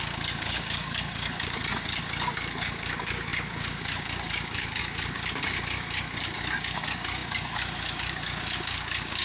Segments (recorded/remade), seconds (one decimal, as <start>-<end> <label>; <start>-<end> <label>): 0.0-9.2 remade